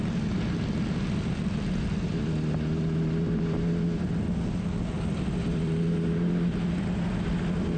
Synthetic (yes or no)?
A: no